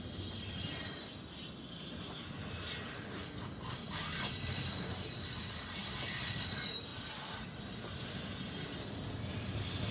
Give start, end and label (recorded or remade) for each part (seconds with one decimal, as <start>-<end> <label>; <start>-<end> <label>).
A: 0.0-9.9 recorded